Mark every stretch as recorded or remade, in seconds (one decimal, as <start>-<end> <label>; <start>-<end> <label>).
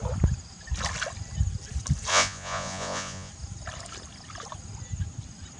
0.0-2.1 recorded; 2.1-3.3 remade; 3.3-5.6 recorded